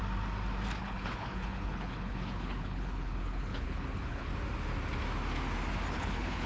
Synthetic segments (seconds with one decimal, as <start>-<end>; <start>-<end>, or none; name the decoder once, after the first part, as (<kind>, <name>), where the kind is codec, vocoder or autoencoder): 0.8-4.3 (codec, HILCodec); 5.9-6.5